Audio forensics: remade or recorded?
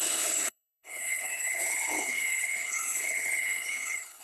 remade